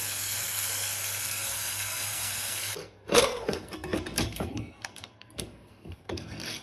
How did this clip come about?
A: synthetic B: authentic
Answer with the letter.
A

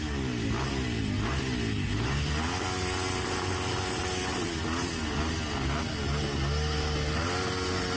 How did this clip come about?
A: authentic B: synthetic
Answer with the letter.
A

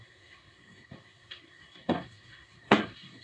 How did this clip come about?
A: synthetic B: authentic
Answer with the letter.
A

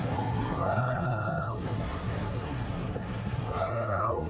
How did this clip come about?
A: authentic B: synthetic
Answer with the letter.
B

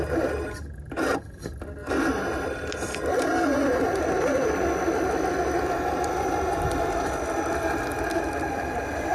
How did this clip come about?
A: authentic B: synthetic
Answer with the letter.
A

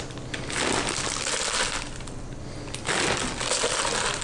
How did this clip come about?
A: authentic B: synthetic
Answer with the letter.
A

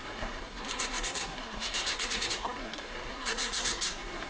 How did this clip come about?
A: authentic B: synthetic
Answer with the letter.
B